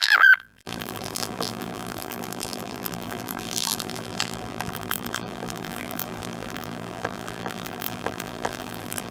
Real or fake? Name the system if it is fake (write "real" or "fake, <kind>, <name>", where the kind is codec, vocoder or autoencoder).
fake, vocoder, BigVGAN v2